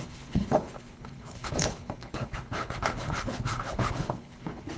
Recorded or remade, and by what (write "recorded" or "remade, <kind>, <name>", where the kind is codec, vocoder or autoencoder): remade, codec, HILCodec